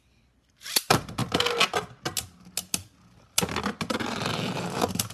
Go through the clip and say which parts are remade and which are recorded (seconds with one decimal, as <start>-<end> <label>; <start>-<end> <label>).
0.0-1.2 remade; 1.2-4.3 recorded; 4.3-5.1 remade